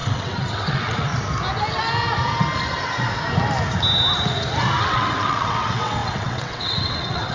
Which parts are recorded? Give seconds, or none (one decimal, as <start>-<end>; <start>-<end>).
1.1-4.8